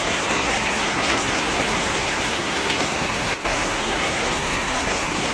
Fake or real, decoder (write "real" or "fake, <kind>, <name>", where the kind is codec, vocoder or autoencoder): fake, codec, SNAC